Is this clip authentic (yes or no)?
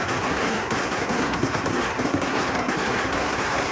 no